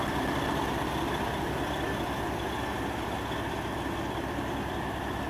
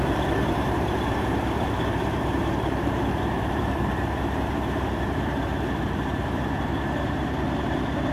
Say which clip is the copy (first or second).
second